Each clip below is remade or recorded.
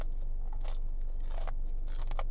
recorded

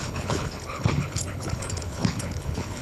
remade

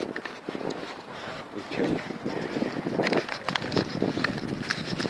recorded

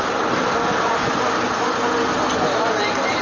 recorded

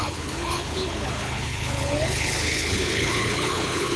remade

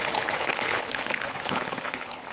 remade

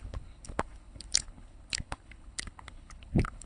remade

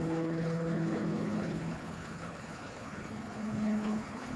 remade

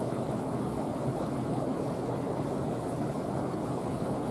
remade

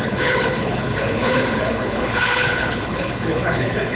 remade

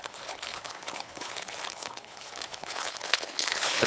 remade